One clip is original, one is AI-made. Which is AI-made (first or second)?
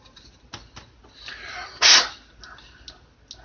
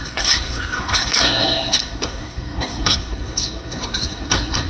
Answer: second